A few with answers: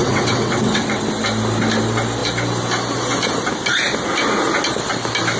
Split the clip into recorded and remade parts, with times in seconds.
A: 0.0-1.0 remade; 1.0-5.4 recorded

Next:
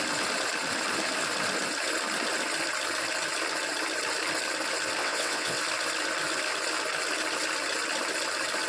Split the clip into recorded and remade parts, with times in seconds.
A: 0.0-5.0 recorded; 5.0-5.6 remade; 5.6-8.7 recorded

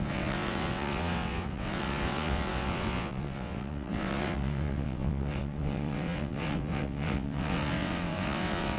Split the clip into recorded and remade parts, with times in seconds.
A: 0.0-8.8 remade

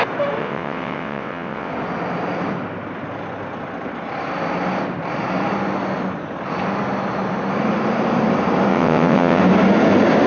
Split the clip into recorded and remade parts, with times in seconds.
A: 0.0-0.4 recorded; 0.4-1.7 remade; 1.7-8.7 recorded; 8.7-9.4 remade; 9.4-10.3 recorded

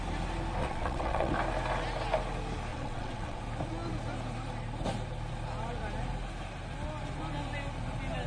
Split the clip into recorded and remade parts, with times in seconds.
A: 0.0-0.6 recorded; 0.6-1.3 remade; 1.3-2.7 recorded; 2.7-3.4 remade; 3.4-8.3 recorded

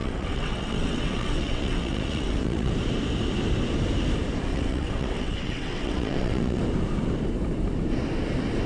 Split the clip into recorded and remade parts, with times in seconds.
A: 0.0-2.7 remade; 2.7-4.5 recorded; 4.5-6.6 remade; 6.6-8.7 recorded